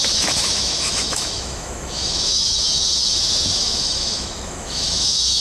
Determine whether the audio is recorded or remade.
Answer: remade